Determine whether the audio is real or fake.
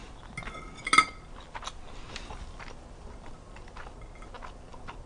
real